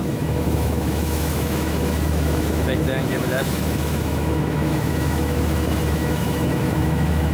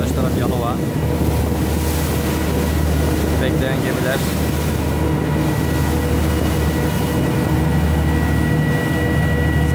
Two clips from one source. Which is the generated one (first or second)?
first